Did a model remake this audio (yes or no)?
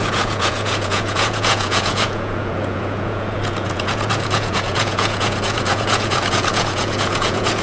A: yes